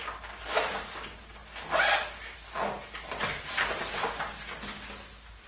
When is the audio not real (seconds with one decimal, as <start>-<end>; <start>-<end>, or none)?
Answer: none